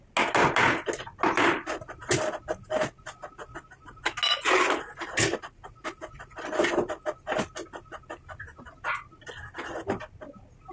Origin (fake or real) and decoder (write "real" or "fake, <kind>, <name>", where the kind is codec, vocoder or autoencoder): real